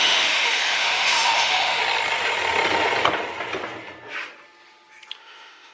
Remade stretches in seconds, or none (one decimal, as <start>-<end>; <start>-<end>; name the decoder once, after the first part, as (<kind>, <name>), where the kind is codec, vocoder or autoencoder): 0.0-1.8 (autoencoder, DAC-VAE); 5.2-5.7